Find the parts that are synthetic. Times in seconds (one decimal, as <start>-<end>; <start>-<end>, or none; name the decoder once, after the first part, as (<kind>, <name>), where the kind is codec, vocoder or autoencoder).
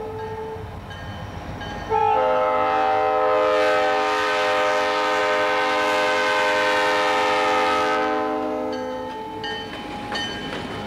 none